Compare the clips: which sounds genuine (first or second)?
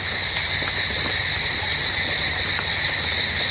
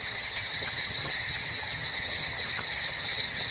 first